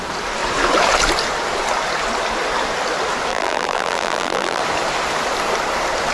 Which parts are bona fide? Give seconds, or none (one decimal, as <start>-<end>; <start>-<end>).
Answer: 0.0-3.3; 4.6-6.1